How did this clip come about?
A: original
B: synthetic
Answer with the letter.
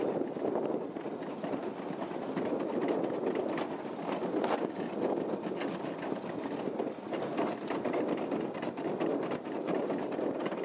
A